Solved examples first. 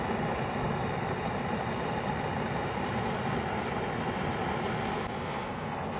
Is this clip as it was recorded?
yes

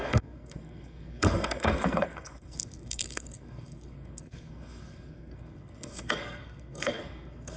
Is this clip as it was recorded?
no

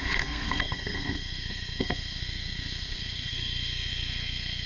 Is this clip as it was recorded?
no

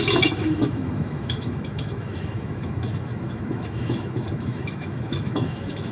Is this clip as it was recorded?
no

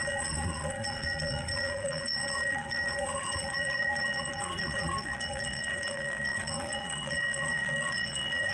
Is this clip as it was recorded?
no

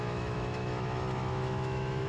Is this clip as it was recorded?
no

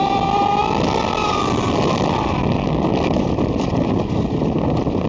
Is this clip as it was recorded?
no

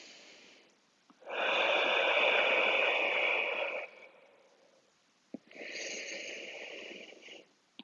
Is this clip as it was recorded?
yes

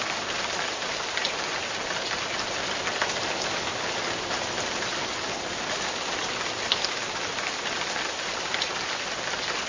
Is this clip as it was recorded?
yes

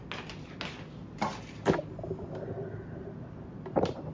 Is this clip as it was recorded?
yes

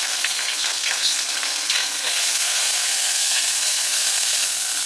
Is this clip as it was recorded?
no